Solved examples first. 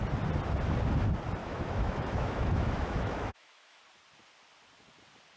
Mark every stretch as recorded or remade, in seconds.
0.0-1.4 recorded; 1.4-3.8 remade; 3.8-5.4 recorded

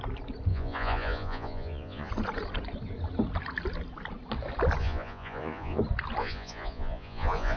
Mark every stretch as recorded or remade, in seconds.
0.0-0.5 recorded; 0.5-2.1 remade; 2.1-4.8 recorded; 4.8-5.8 remade; 5.8-6.2 recorded; 6.2-7.6 remade

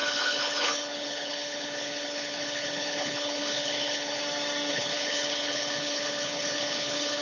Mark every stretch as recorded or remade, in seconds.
0.0-4.2 remade; 4.2-4.7 recorded; 4.7-7.2 remade